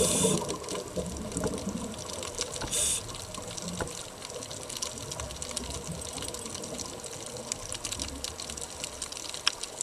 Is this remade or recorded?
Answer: recorded